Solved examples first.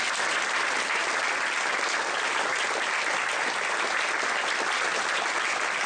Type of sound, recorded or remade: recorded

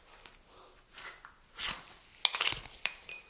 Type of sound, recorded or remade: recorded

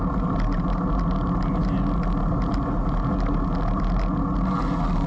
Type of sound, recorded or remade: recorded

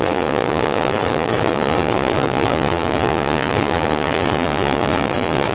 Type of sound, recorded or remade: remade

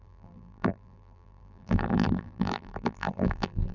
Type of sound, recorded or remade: remade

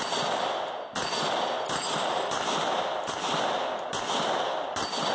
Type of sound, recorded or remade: recorded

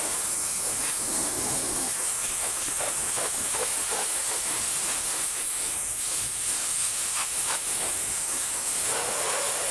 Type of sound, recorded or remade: remade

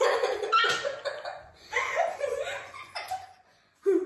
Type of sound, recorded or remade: remade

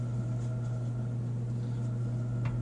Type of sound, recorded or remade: recorded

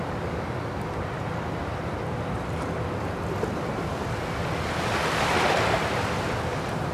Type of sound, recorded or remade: recorded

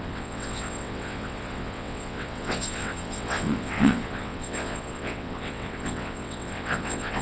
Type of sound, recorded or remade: remade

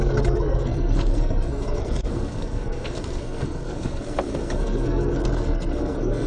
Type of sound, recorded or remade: remade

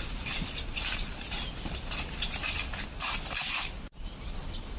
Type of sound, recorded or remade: recorded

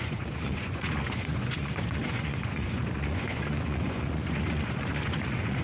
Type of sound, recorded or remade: remade